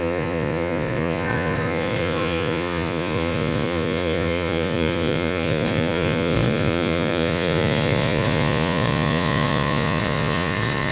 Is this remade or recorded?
remade